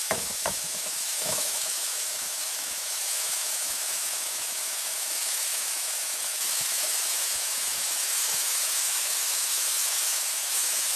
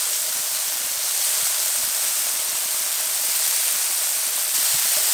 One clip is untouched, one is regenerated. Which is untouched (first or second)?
second